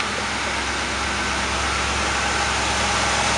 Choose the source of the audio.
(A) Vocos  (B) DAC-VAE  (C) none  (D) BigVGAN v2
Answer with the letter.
C